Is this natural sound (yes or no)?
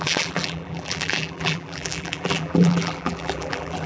no